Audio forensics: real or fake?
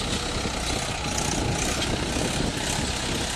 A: real